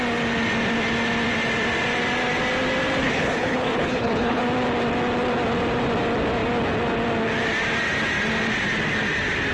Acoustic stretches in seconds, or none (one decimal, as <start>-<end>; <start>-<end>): 0.0-3.0; 4.4-9.5